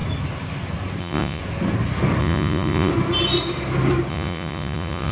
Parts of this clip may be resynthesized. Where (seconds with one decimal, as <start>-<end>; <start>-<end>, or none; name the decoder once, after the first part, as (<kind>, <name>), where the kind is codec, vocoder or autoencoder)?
1.0-1.4 (vocoder, Vocos); 2.2-2.9; 4.1-5.1